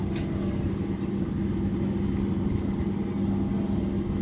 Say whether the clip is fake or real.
real